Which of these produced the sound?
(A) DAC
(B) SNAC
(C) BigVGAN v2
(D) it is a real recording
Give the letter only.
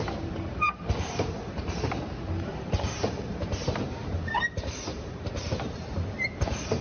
C